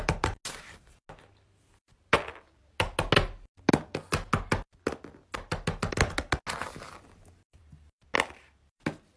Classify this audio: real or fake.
real